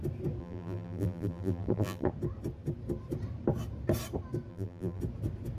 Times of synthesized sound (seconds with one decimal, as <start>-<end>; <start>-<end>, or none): 0.4-2.1; 4.5-5.0